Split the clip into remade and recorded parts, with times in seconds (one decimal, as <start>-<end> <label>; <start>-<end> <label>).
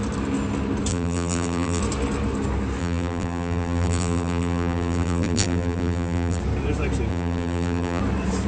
0.0-0.9 recorded; 0.9-1.8 remade; 1.8-2.8 recorded; 2.8-6.4 remade; 6.4-7.1 recorded; 7.1-8.0 remade; 8.0-8.5 recorded